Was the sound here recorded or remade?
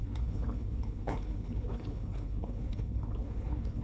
remade